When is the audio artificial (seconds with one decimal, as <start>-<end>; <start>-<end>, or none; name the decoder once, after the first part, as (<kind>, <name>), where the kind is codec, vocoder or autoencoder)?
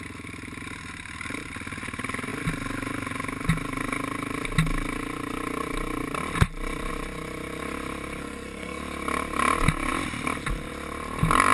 8.2-8.8 (codec, SNAC)